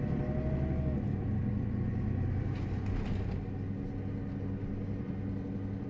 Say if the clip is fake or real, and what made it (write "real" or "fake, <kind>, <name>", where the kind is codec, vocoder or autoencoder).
real